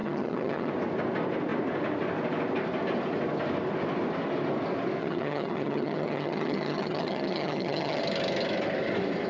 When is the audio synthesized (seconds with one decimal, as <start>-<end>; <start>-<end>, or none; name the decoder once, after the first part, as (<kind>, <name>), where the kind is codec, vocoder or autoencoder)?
0.0-0.7 (vocoder, HiFi-GAN); 5.0-8.0